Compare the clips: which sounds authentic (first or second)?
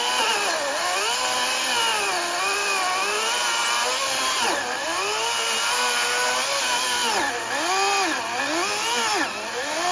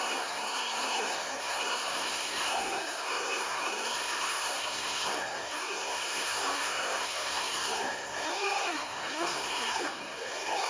first